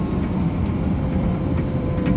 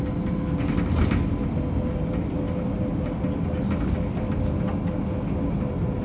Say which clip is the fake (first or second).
first